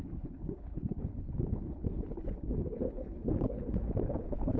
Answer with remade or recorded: remade